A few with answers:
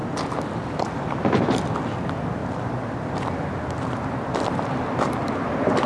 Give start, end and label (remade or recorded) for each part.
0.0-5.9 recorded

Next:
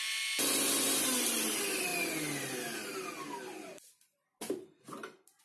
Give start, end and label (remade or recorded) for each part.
0.0-5.4 recorded

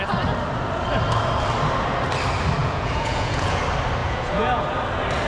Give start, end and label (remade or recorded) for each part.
0.0-2.6 recorded; 2.6-3.6 remade; 3.6-4.0 recorded; 4.0-4.6 remade; 4.6-5.3 recorded

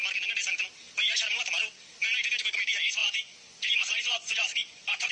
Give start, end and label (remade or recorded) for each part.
0.0-3.0 recorded; 3.0-5.1 remade

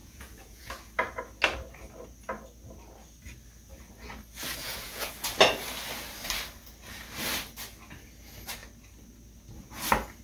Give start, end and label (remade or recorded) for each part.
0.0-0.7 remade; 0.7-4.6 recorded; 4.6-5.1 remade; 5.1-10.2 recorded

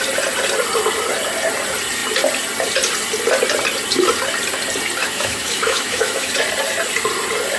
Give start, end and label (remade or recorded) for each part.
0.0-5.0 recorded; 5.0-6.3 remade; 6.3-7.6 recorded

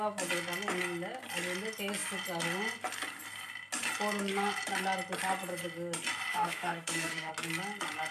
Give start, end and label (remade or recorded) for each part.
0.0-6.3 recorded; 6.3-7.3 remade; 7.3-8.1 recorded